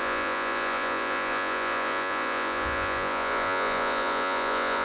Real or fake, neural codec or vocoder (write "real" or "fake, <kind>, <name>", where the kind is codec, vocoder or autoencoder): fake, vocoder, Vocos